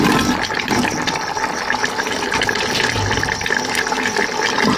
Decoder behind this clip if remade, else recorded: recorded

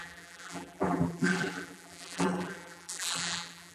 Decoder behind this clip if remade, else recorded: remade, vocoder, BigVGAN v2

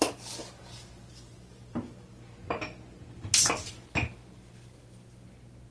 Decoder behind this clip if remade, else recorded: recorded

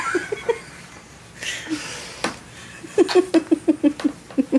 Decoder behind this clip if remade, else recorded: recorded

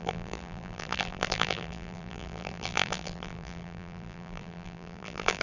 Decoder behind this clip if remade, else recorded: remade, vocoder, BigVGAN v2